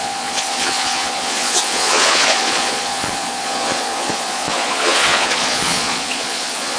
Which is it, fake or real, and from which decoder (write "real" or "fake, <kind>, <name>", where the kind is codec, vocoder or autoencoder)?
fake, vocoder, Vocos